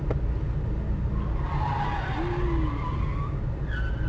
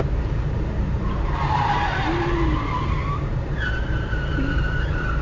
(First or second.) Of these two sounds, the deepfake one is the second